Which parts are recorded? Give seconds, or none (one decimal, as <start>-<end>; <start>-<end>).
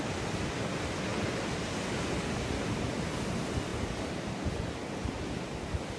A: 0.0-6.0